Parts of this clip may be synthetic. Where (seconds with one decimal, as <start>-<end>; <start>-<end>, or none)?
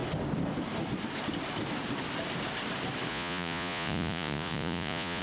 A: 3.1-5.2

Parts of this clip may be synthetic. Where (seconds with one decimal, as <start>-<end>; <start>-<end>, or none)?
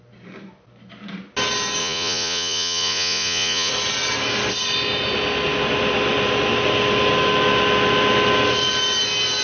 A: 1.8-3.7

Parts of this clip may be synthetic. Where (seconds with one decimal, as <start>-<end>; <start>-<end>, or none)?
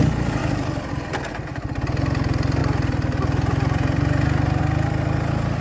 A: 2.6-4.6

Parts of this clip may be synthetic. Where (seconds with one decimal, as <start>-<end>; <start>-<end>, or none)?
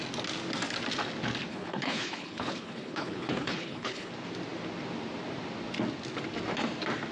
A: 1.5-4.1